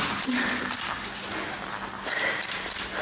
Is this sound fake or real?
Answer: real